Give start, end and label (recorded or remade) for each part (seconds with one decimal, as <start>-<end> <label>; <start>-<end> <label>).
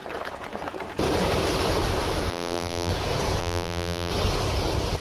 0.0-2.3 recorded; 2.3-2.9 remade; 2.9-3.4 recorded; 3.4-4.1 remade; 4.1-5.0 recorded